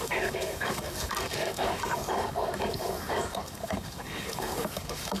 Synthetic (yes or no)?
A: yes